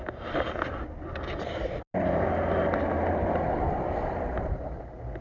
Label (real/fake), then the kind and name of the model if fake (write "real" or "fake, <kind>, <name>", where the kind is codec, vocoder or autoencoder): real